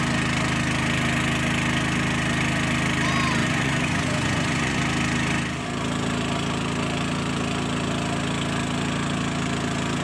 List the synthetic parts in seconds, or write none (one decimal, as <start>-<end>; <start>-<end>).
3.4-4.8